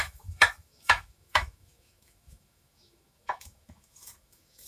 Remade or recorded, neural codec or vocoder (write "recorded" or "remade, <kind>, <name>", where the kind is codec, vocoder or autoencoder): remade, autoencoder, DAC-VAE